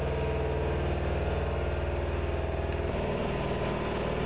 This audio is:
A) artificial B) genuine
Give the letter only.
B